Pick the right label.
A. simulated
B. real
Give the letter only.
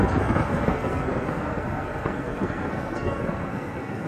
A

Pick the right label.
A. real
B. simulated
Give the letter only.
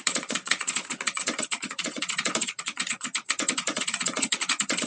B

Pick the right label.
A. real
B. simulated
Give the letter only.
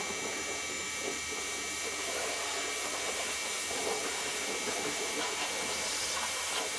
B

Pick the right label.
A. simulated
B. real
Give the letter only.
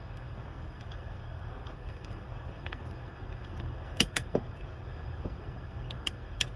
A